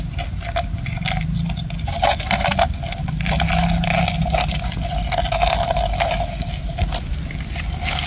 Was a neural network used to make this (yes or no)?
no